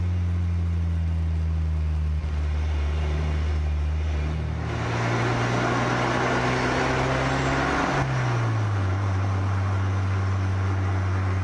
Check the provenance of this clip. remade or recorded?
recorded